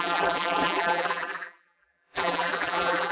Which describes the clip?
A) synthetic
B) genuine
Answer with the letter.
A